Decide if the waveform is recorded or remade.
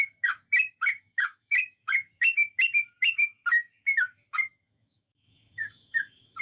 remade